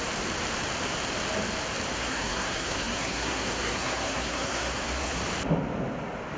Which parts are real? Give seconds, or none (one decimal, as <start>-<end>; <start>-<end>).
0.0-1.9; 5.2-6.4